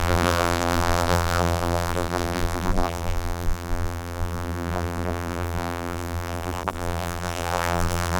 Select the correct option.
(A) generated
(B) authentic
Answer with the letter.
A